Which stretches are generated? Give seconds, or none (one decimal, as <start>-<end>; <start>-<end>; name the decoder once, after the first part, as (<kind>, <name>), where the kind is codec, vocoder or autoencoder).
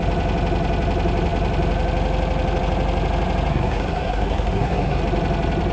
3.5-5.0 (codec, SNAC)